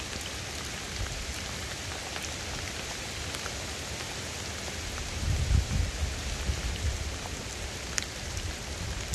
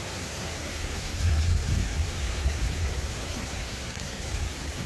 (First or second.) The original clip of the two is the first